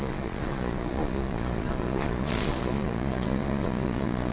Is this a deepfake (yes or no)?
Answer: yes